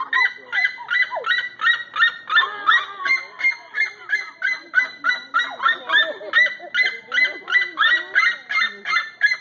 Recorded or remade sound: recorded